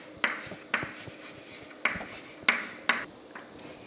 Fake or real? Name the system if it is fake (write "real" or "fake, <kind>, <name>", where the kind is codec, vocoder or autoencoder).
real